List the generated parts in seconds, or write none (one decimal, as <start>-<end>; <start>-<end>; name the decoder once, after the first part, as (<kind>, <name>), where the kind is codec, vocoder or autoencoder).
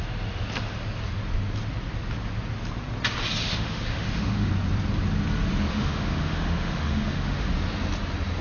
3.4-4.5 (autoencoder, DAC-VAE); 5.7-7.5